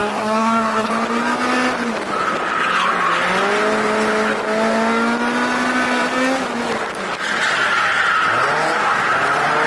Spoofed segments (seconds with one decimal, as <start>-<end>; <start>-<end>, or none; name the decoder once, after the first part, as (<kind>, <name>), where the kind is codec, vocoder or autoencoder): 0.0-0.9 (codec, SNAC)